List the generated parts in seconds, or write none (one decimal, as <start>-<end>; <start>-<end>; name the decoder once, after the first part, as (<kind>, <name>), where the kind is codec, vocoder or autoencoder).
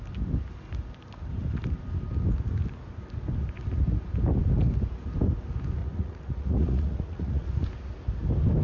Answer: 5.8-7.5 (vocoder, Vocos)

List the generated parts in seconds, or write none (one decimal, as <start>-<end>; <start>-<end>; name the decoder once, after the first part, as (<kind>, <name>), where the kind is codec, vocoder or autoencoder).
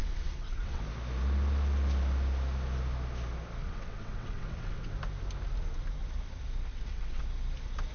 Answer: 0.0-0.8 (vocoder, WaveNeXt); 3.6-4.9; 6.7-7.2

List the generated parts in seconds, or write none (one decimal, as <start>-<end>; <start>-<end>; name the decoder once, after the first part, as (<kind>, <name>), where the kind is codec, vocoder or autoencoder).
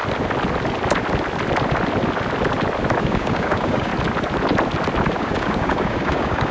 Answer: 3.0-3.9 (codec, DAC); 5.2-6.5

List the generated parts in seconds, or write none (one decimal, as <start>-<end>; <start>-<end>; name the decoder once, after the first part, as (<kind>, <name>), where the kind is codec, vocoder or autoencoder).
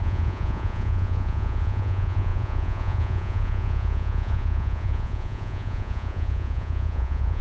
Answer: 0.0-7.4 (vocoder, Vocos)